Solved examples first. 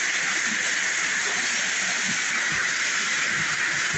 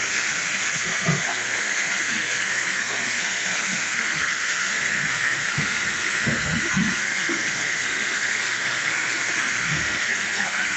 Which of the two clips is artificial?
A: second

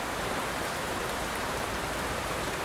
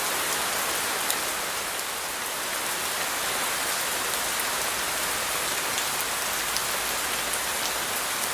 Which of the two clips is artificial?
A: first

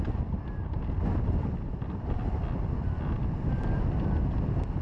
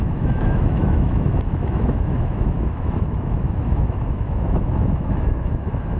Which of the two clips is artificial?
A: second